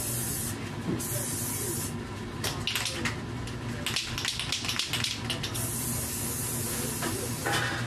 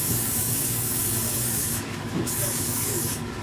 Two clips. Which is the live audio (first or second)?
first